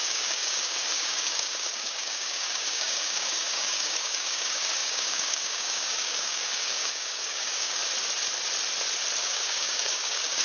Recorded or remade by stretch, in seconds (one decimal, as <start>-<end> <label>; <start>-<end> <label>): 0.0-7.8 remade; 7.8-9.2 recorded; 9.2-10.4 remade